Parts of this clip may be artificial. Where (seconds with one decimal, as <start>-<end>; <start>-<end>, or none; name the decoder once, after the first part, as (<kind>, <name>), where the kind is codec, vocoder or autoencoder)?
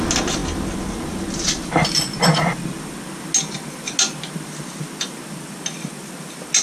none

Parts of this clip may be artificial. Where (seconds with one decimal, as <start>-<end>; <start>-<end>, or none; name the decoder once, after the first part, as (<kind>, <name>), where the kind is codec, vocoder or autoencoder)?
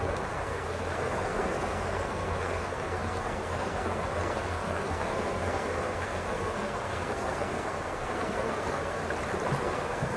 0.0-9.0 (codec, SNAC); 9.6-10.2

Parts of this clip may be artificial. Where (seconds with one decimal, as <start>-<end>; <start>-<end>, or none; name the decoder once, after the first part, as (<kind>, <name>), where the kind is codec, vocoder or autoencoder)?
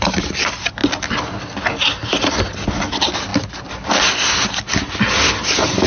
none